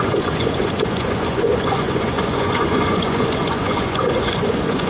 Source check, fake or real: fake